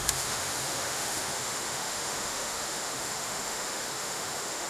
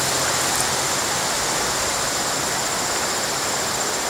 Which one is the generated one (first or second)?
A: first